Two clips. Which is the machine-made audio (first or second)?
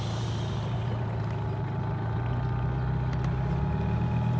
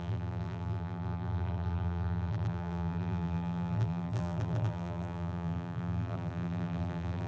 second